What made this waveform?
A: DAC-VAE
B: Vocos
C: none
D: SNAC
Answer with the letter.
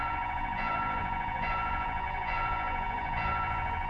B